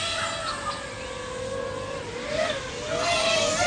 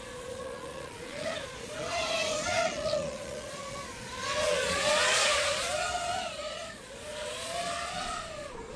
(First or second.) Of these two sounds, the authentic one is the first